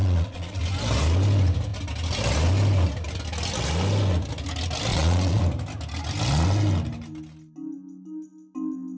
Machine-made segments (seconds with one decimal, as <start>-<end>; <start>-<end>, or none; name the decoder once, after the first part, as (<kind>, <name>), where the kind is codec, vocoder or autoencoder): 0.0-0.6 (vocoder, Vocos); 4.9-5.4